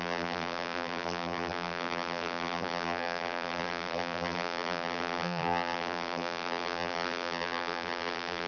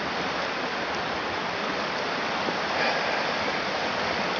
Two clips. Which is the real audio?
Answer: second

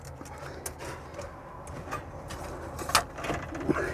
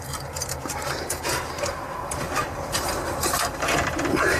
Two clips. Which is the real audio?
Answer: first